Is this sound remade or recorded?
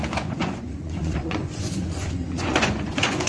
remade